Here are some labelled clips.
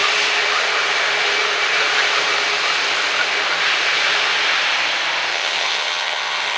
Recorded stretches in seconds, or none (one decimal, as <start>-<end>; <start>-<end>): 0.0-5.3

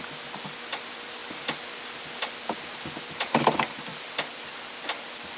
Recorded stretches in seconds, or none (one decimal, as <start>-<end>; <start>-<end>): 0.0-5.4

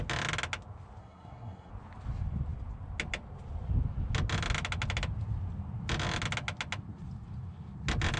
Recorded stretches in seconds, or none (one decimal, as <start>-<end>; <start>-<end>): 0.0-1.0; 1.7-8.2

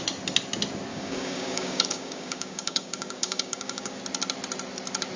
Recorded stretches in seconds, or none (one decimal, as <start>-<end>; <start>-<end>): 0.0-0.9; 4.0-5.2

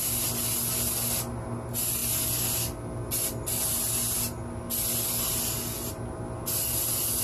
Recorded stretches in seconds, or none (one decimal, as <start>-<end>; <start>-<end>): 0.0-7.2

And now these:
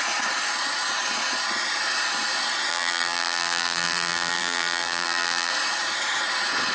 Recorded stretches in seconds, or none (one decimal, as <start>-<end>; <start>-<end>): 0.0-2.7; 5.5-6.7

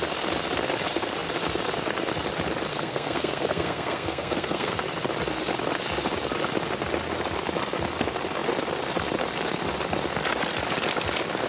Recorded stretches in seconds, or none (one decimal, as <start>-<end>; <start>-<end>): 0.0-2.7; 4.8-11.5

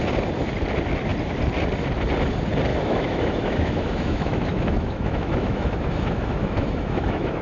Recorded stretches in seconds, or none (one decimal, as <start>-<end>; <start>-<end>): 0.0-2.7